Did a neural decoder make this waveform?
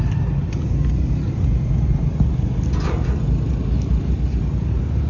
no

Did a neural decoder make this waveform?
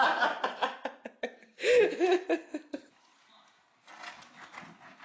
no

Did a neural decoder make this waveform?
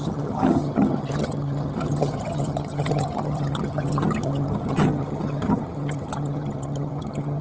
yes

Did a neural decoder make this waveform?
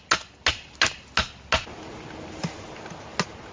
no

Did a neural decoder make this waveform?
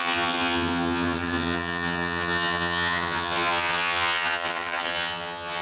yes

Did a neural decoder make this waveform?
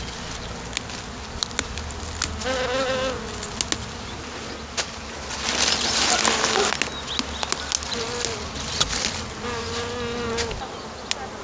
no